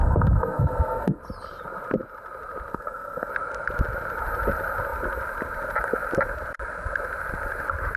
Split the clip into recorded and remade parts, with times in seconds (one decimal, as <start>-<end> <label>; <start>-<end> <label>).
0.0-1.2 remade; 1.2-2.7 recorded; 2.7-3.3 remade; 3.3-8.0 recorded